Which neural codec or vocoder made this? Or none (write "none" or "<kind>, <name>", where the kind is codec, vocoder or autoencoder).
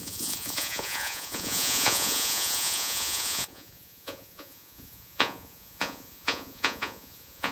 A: vocoder, Vocos